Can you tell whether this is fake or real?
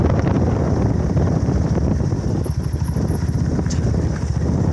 real